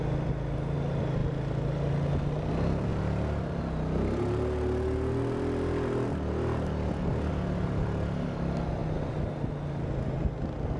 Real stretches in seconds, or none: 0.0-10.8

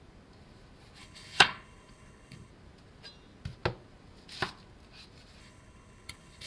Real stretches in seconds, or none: 0.0-1.0; 2.5-5.4